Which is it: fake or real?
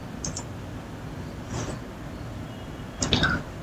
real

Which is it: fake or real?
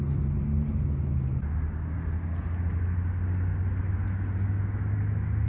real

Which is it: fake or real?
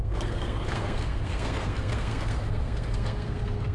fake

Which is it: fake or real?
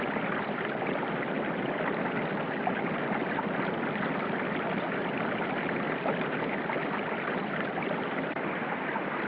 real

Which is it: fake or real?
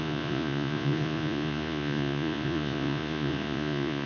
fake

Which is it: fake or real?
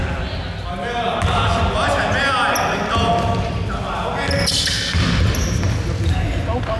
real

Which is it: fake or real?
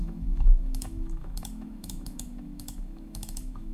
fake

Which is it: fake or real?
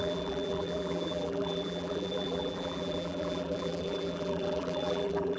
fake